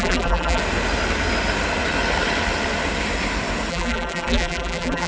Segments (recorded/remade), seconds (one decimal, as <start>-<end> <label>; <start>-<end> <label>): 0.0-0.6 remade; 0.6-3.7 recorded; 3.7-5.1 remade